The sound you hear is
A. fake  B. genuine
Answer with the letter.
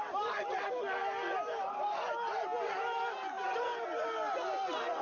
B